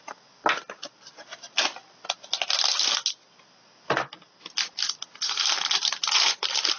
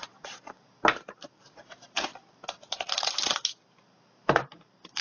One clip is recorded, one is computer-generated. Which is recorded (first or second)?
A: first